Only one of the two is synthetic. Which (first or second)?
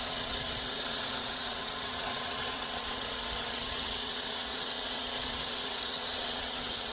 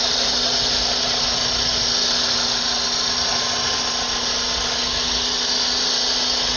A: first